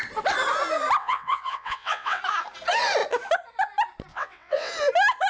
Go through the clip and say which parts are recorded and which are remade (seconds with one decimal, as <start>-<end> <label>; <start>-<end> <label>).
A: 0.0-1.0 recorded; 1.0-2.2 remade; 2.2-4.1 recorded; 4.1-4.7 remade; 4.7-5.3 recorded